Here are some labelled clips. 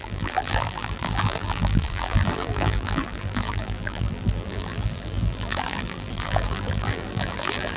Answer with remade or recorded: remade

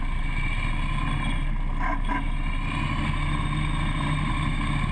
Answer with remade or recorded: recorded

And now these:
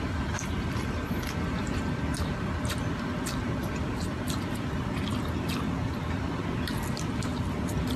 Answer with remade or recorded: remade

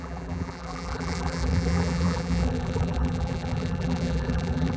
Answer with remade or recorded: remade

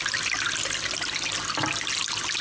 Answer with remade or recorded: recorded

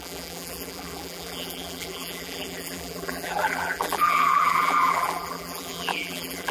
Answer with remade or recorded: remade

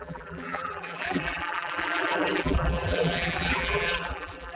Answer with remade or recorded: remade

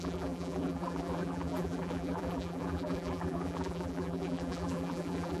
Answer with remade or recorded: remade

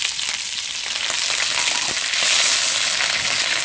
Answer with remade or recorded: recorded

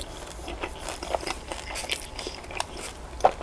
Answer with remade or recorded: recorded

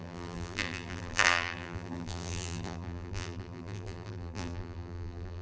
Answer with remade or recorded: remade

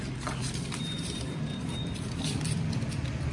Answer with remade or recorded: remade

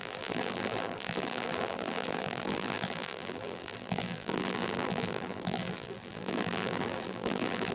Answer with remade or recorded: remade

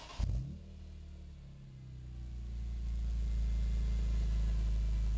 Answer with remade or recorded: recorded